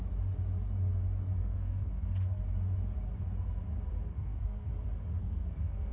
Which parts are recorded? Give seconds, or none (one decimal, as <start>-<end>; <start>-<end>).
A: 0.0-1.4; 2.4-4.1; 4.7-5.2